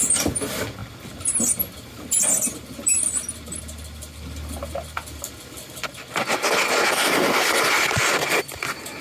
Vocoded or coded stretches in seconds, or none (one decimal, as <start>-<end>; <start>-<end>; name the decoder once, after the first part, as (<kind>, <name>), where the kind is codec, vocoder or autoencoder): 0.0-0.8 (vocoder, BigVGAN v2); 3.6-4.6; 8.0-9.0